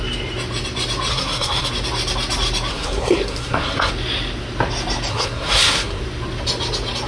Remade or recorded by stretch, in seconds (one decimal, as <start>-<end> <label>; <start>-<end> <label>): 0.0-1.1 recorded; 1.1-1.7 remade; 1.7-2.7 recorded; 2.7-3.9 remade; 3.9-5.1 recorded; 5.1-6.0 remade; 6.0-7.1 recorded